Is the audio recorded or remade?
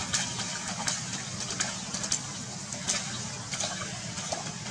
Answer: recorded